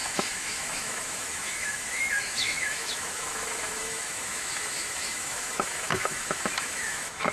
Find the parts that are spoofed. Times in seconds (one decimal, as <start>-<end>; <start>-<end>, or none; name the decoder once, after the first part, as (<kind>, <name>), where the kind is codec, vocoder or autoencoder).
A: 0.0-7.3 (autoencoder, DAC-VAE)